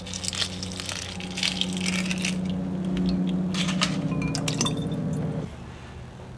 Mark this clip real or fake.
real